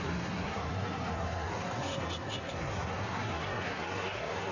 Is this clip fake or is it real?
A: fake